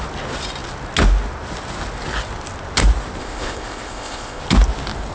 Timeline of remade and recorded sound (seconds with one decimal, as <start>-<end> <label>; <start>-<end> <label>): 0.0-3.2 recorded; 3.2-4.4 remade; 4.4-5.1 recorded